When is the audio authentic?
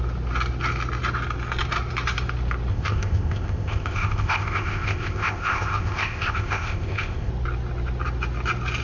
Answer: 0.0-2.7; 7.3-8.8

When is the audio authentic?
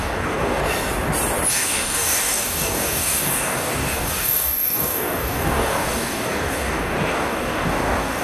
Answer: 0.6-1.5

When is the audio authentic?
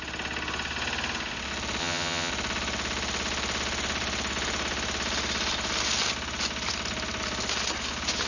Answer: 0.0-1.8; 2.3-8.3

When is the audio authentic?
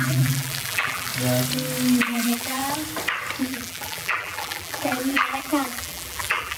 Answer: 1.1-2.0; 2.6-3.4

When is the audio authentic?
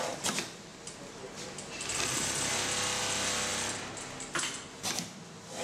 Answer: 0.0-5.6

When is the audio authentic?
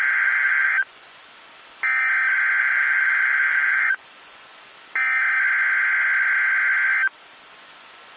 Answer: 1.2-2.6; 4.7-7.5